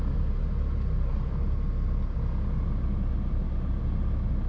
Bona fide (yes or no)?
yes